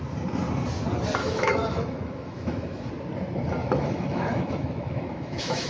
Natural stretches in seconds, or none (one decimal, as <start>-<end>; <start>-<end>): 0.0-1.2; 2.9-3.6